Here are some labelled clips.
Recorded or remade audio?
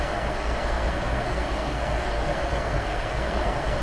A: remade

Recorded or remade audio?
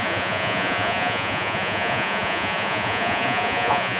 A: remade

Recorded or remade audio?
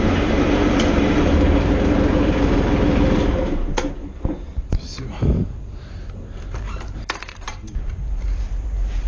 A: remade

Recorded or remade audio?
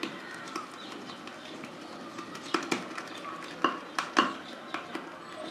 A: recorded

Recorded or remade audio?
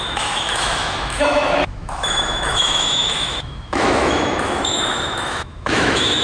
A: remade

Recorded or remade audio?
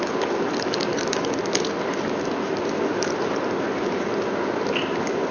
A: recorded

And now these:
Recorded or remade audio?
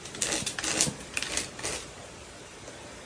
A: recorded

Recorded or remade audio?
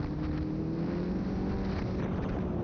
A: recorded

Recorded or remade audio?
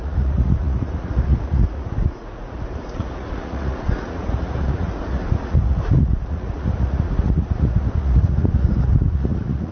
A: remade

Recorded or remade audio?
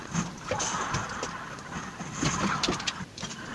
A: recorded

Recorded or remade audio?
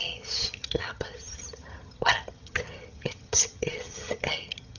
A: remade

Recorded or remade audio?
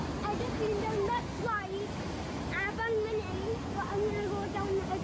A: recorded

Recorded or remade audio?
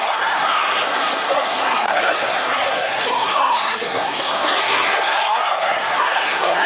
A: remade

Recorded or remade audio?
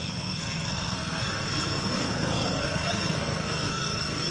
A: remade